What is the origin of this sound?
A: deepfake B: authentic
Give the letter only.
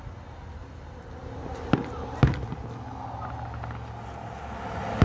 B